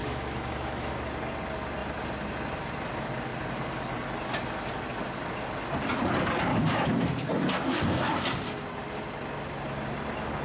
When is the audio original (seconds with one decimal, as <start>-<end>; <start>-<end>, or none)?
0.9-6.5; 7.3-10.4